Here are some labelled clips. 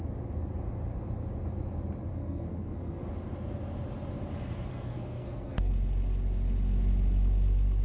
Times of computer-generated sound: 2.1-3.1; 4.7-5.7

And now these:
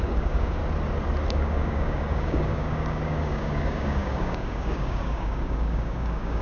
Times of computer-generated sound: 0.0-0.6; 1.3-6.4

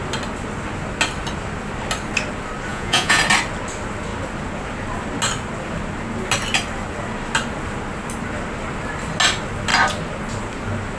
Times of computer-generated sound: 2.7-3.2

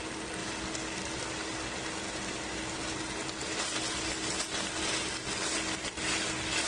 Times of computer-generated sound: none

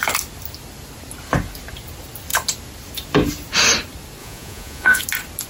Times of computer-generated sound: 4.2-5.0

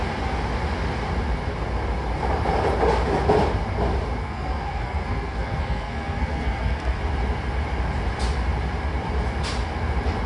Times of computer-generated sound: 4.2-7.0

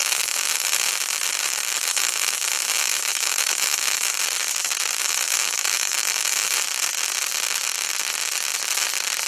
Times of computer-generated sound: 0.0-0.9; 1.9-4.1; 5.0-6.6

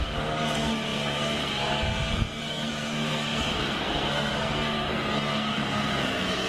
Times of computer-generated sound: 0.0-6.5